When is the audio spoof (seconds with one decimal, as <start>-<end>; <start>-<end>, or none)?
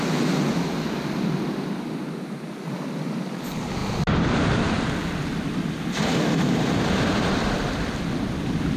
none